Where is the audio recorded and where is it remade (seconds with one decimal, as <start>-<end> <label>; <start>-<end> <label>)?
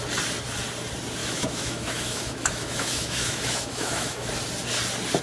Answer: 0.0-1.2 recorded; 1.2-4.3 remade; 4.3-5.2 recorded